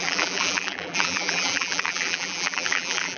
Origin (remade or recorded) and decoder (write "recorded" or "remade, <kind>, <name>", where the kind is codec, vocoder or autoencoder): remade, vocoder, BigVGAN v2